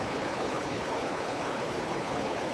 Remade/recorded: remade